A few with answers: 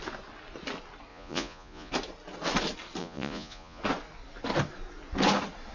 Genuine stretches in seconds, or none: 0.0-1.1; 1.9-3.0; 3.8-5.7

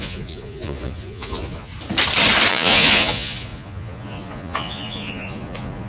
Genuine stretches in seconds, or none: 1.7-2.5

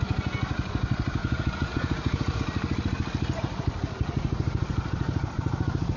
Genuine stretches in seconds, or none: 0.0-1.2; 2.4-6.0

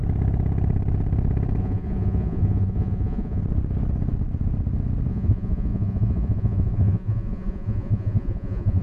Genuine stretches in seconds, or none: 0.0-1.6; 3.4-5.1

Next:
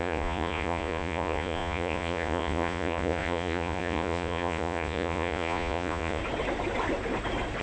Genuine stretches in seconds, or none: 6.2-7.6

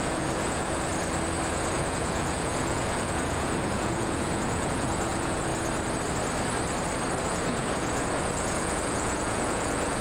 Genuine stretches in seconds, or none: 0.9-1.5; 5.5-7.2

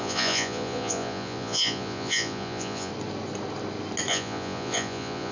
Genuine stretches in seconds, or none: 2.9-4.1